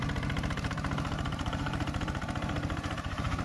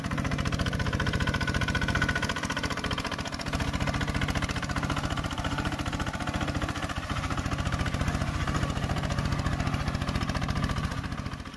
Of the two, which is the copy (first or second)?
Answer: first